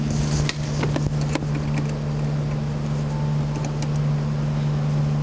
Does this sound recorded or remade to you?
recorded